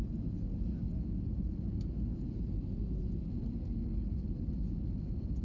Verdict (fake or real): real